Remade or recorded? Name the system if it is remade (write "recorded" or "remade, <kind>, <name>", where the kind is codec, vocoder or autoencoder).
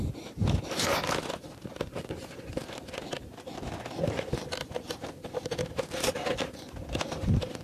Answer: recorded